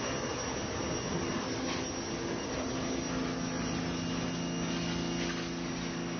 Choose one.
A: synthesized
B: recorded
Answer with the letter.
B